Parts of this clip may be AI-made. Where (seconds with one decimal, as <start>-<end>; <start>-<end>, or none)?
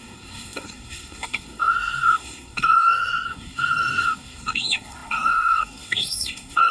0.0-6.7